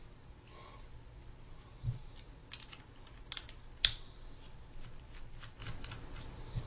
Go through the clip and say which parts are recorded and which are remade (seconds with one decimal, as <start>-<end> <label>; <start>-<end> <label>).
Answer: 0.0-6.7 recorded